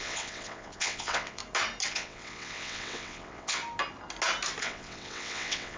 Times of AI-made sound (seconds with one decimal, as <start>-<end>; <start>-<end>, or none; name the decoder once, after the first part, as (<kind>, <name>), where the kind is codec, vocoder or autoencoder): 0.0-1.4 (vocoder, WaveNeXt); 1.9-3.6; 4.6-5.8